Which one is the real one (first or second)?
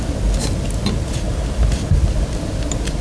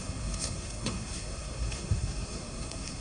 first